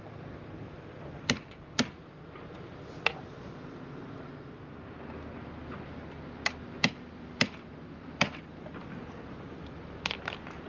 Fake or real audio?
real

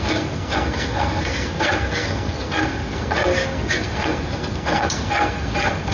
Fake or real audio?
fake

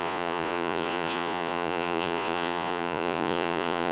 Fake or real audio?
fake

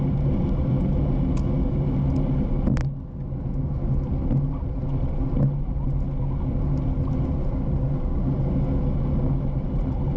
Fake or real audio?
real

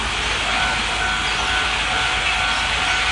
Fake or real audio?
real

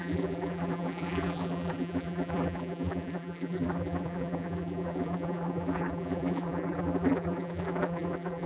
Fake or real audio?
fake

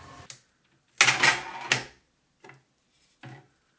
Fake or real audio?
real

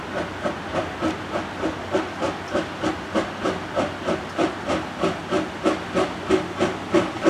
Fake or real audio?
real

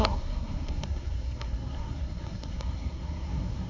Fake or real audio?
fake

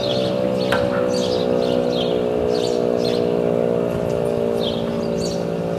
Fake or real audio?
real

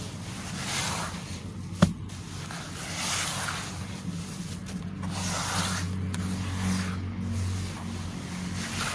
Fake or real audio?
real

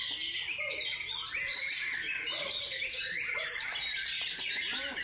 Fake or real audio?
real